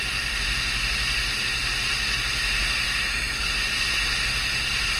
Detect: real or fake real